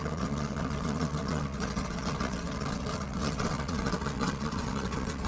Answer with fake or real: fake